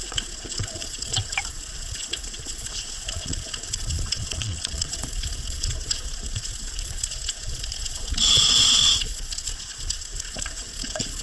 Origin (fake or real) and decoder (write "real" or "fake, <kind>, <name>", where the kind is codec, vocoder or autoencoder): fake, vocoder, Vocos